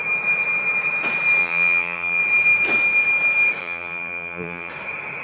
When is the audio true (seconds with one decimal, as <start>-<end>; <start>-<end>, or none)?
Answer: 0.0-1.4; 2.2-3.6; 4.7-5.2